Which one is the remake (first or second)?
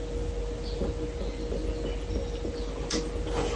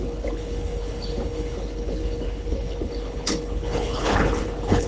second